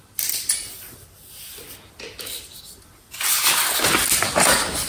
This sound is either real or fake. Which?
real